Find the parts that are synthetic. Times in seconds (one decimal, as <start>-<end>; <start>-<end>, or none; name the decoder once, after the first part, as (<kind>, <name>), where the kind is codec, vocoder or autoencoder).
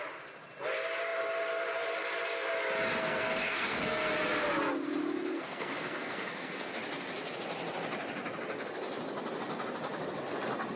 3.0-4.1 (codec, SNAC); 5.3-6.7